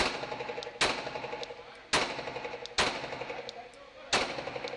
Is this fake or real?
real